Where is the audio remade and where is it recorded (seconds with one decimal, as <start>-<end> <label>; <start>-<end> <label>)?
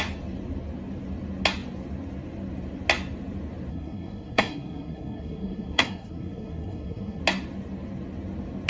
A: 0.0-3.7 recorded; 3.7-7.2 remade; 7.2-8.7 recorded